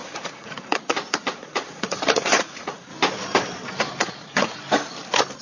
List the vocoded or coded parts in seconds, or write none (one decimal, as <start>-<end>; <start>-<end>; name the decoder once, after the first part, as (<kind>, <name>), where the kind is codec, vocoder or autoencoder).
0.0-2.9 (vocoder, Vocos); 4.0-4.6